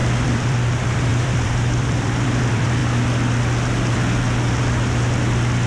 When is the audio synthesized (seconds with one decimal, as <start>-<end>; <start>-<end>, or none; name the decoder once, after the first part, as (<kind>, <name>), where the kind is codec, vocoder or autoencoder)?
0.0-2.8 (vocoder, BigVGAN v2)

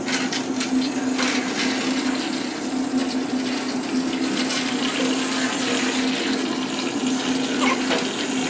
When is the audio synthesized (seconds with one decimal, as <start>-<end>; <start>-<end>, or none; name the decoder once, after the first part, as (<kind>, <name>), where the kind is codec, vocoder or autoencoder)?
none

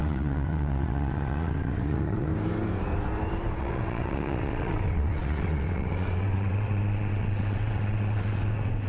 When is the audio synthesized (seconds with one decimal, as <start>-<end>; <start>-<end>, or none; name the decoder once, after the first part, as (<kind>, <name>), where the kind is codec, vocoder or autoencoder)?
0.0-2.3 (vocoder, WaveNeXt); 3.6-8.9

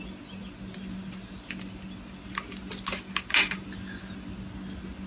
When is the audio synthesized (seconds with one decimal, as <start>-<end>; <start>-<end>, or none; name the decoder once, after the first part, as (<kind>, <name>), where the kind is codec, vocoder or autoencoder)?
none

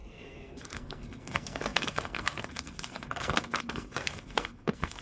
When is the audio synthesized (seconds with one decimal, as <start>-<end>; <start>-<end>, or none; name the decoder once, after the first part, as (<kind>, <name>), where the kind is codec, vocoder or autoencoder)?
0.0-5.0 (codec, SNAC)

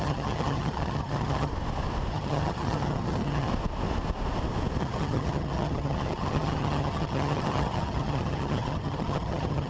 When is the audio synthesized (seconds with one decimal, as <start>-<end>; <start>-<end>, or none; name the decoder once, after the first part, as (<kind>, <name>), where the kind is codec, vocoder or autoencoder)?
0.0-1.5 (vocoder, HiFi-GAN); 2.1-3.5; 4.8-9.7

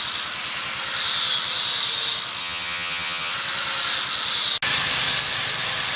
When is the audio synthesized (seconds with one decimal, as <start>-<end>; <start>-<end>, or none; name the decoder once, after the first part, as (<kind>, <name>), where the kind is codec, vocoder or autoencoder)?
2.4-3.3 (vocoder, HiFi-GAN)